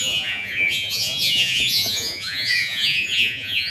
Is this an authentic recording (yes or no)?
no